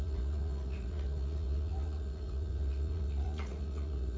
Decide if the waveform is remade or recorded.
remade